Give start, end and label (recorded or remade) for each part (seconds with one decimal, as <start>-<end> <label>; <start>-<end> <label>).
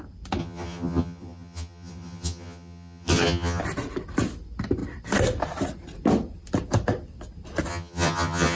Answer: 0.0-0.4 recorded; 0.4-3.6 remade; 3.6-7.7 recorded; 7.7-8.6 remade